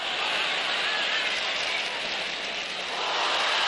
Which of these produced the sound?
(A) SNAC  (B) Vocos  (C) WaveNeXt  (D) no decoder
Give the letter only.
D